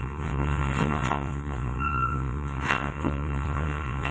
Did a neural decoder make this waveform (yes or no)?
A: yes